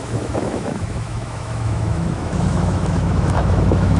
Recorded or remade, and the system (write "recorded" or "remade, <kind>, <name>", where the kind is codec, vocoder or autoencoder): remade, autoencoder, DAC-VAE